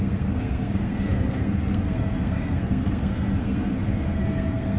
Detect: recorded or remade remade